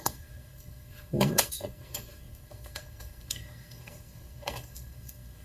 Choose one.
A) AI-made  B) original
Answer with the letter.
A